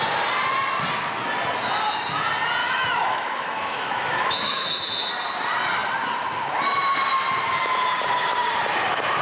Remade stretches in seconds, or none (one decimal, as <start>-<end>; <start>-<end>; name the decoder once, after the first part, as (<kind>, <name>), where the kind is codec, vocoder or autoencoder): 2.6-5.1 (autoencoder, DAC-VAE)